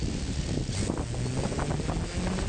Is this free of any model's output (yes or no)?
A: yes